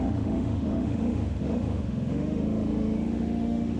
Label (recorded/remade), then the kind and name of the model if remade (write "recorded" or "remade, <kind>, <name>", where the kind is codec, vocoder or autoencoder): remade, autoencoder, DAC-VAE